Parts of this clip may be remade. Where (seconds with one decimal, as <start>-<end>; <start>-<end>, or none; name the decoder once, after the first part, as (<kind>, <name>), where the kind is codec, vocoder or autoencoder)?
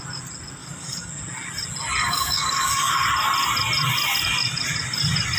0.6-1.2 (codec, DAC); 2.0-3.0